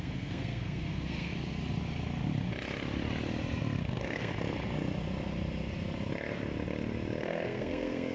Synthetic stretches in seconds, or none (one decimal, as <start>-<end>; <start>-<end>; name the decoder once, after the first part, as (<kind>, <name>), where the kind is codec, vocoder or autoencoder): 0.0-1.3 (codec, SNAC); 3.8-4.3; 7.2-8.1